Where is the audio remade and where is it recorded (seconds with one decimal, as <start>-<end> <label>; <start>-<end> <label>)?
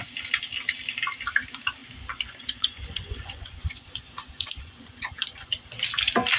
0.0-1.8 recorded; 1.8-5.6 remade; 5.6-6.4 recorded